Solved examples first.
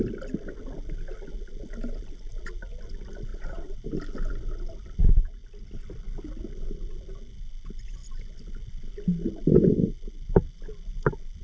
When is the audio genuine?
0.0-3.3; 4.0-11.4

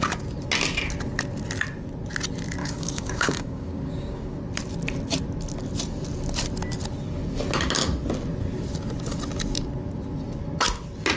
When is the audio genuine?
0.0-2.6; 4.4-11.2

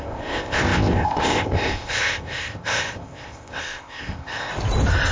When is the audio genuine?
4.5-5.1

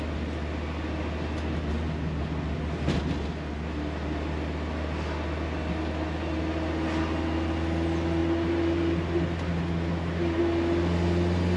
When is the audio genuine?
0.0-11.6

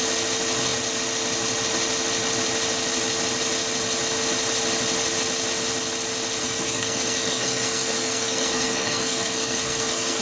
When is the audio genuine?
0.0-6.4